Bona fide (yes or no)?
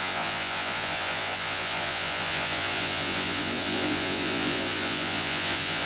no